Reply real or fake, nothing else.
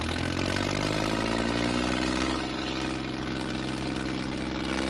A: real